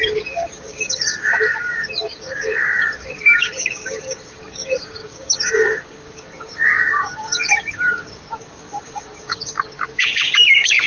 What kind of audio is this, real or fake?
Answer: fake